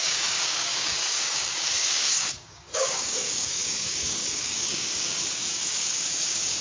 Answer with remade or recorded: remade